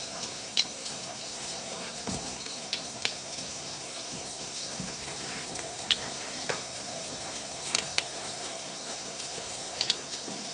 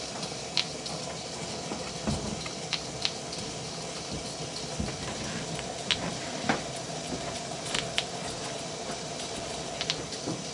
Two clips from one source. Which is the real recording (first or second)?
second